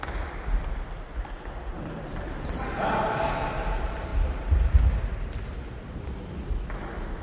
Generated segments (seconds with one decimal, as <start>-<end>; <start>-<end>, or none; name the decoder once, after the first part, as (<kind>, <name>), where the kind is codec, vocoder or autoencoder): none